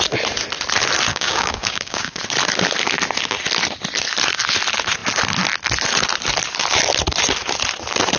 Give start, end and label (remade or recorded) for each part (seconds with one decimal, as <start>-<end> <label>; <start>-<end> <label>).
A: 0.0-1.1 recorded; 1.1-2.2 remade; 2.2-8.2 recorded